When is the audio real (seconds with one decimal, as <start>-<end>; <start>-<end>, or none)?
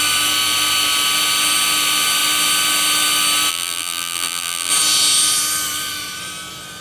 0.0-3.5; 4.7-6.8